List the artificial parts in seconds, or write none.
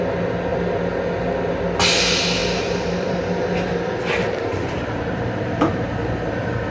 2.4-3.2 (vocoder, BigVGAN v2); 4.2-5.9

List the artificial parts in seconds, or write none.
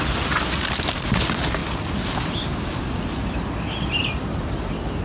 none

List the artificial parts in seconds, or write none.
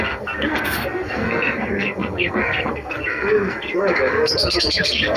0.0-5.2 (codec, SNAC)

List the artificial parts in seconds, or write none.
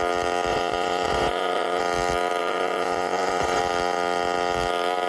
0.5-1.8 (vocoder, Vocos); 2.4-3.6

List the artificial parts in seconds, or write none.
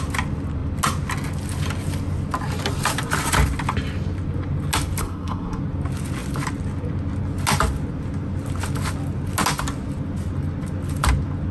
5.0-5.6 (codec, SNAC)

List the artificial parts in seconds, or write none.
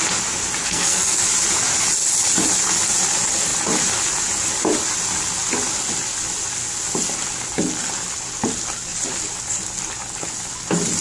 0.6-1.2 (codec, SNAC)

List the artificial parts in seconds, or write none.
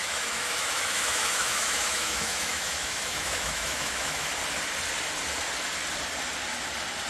0.0-4.3 (autoencoder, DAC-VAE)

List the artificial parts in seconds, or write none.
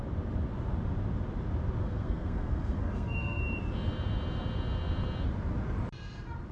1.8-3.4 (codec, SNAC)